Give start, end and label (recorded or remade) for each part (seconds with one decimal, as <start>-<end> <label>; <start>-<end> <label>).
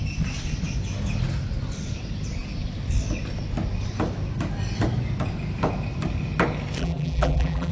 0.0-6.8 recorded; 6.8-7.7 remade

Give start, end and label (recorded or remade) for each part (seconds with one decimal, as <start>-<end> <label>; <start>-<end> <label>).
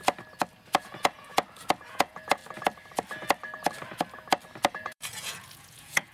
0.0-0.8 recorded; 0.8-1.3 remade; 1.3-1.9 recorded; 1.9-2.4 remade; 2.4-4.7 recorded; 4.7-6.1 remade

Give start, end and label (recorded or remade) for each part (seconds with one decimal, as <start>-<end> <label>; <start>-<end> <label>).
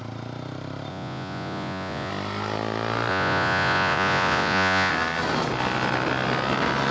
0.0-0.9 recorded; 0.9-2.1 remade; 2.1-3.1 recorded; 3.1-4.9 remade; 4.9-6.9 recorded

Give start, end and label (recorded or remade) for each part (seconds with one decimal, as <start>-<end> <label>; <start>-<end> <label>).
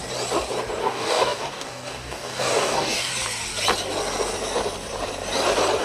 0.0-0.8 recorded; 0.8-3.1 remade; 3.1-5.8 recorded